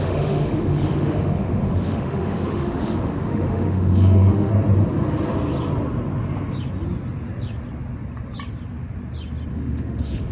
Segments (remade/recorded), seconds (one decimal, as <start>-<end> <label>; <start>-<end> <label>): 0.0-4.5 remade; 4.5-9.5 recorded; 9.5-10.3 remade

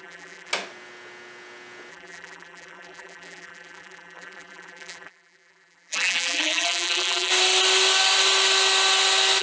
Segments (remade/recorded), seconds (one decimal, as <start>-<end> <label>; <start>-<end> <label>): 0.0-0.5 remade; 0.5-1.9 recorded; 1.9-7.3 remade; 7.3-9.4 recorded

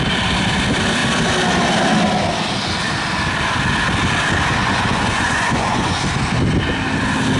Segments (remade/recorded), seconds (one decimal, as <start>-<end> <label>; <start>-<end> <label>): 0.0-4.6 recorded; 4.6-6.0 remade; 6.0-7.4 recorded

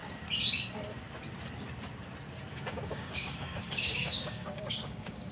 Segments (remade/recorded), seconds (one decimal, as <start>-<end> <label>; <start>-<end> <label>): 0.0-2.5 recorded; 2.5-5.3 remade

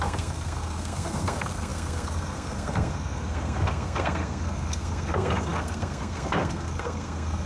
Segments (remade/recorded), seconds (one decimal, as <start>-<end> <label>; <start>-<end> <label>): 0.0-7.5 remade

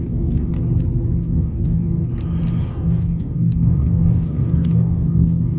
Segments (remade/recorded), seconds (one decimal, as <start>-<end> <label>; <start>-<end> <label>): 0.0-0.5 remade; 0.5-1.2 recorded; 1.2-2.1 remade; 2.1-2.7 recorded; 2.7-5.6 remade

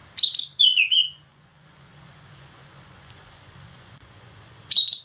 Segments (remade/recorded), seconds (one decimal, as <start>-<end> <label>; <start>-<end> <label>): 0.0-0.6 recorded; 0.6-5.0 remade

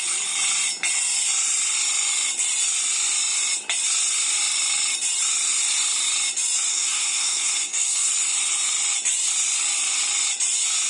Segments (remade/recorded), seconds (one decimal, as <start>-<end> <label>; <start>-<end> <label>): 0.0-6.7 recorded; 6.7-8.1 remade; 8.1-10.9 recorded